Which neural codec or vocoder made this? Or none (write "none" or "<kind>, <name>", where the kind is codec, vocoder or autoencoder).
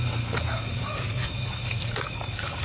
codec, DAC